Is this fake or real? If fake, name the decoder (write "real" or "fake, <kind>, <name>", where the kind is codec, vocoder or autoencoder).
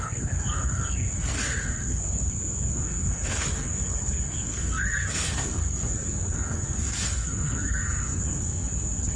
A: fake, codec, SNAC